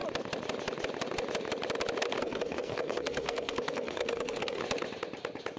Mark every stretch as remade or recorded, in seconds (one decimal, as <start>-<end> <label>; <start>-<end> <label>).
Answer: 0.0-2.2 recorded; 2.2-4.6 remade; 4.6-5.6 recorded